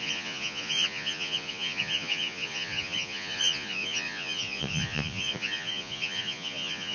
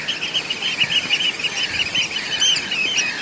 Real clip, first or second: second